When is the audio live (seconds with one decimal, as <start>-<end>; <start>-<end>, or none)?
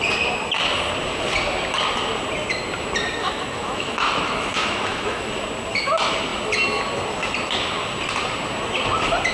0.0-3.2; 5.3-9.3